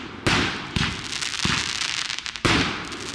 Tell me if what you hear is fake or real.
real